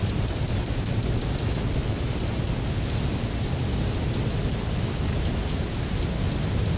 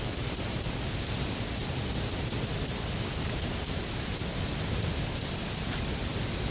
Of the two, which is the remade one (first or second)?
second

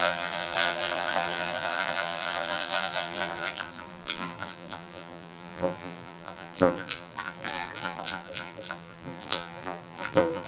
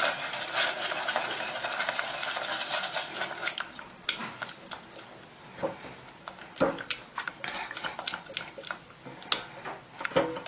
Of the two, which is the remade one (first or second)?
first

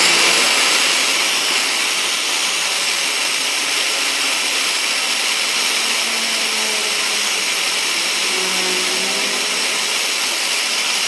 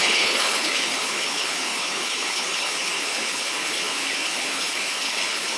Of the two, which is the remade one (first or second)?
second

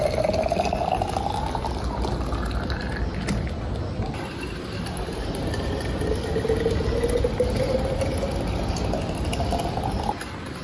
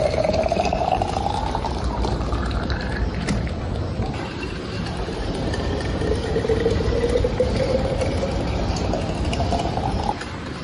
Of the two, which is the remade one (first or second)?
second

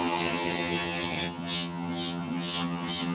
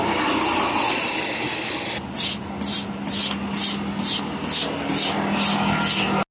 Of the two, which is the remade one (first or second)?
first